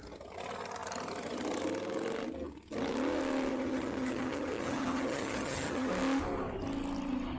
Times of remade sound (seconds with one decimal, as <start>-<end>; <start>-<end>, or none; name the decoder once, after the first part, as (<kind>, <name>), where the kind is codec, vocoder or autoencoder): 3.5-5.9 (vocoder, HiFi-GAN)